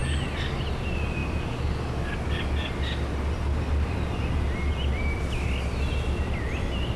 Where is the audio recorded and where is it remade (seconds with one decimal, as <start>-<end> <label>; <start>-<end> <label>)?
0.0-7.0 recorded